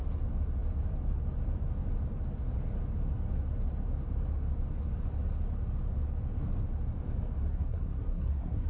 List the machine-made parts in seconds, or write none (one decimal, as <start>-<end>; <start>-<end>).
7.5-8.7